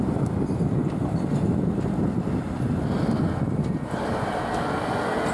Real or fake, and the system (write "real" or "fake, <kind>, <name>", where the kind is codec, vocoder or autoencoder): real